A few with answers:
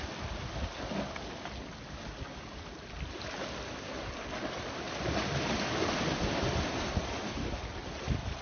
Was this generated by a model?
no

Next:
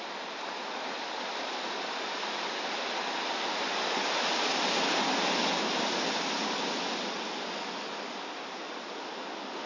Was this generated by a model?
no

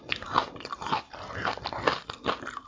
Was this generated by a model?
no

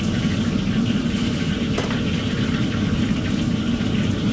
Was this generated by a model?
no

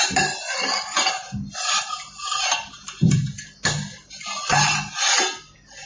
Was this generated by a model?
no